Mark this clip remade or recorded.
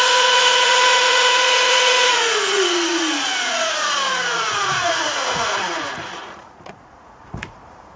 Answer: remade